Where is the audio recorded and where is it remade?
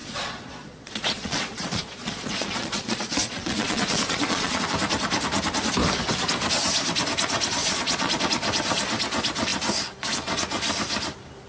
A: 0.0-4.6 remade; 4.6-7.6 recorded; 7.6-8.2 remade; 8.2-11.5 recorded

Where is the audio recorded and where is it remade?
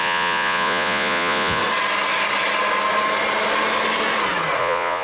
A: 0.0-1.6 remade; 1.6-4.6 recorded; 4.6-5.0 remade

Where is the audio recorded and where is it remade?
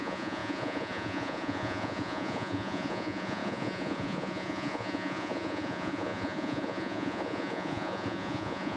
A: 0.0-8.8 remade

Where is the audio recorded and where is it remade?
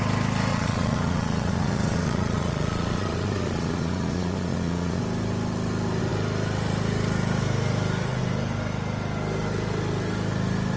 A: 0.0-0.5 recorded; 0.5-5.0 remade; 5.0-10.8 recorded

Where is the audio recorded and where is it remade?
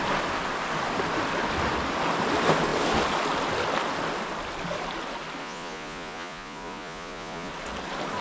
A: 0.0-5.4 recorded; 5.4-7.5 remade; 7.5-8.2 recorded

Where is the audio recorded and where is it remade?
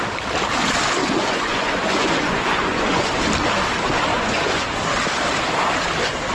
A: 0.0-1.0 recorded; 1.0-3.1 remade; 3.1-4.1 recorded; 4.1-4.8 remade; 4.8-6.3 recorded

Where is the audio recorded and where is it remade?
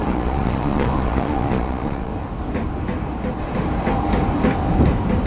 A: 0.0-2.1 remade; 2.1-5.3 recorded